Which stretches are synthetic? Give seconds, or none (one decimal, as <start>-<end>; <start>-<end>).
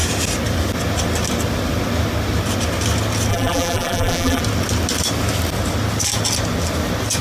3.3-4.4